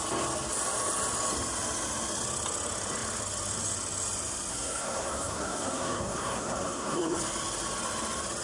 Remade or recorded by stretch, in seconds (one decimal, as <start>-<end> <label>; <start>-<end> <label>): 0.0-4.5 recorded; 4.5-7.2 remade; 7.2-8.4 recorded